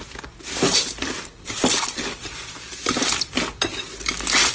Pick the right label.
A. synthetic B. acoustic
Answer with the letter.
B